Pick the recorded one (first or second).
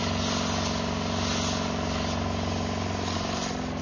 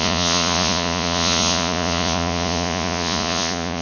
first